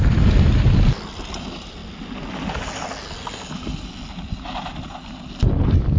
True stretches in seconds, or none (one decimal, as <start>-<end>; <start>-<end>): 0.0-6.0